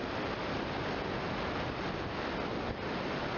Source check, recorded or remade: recorded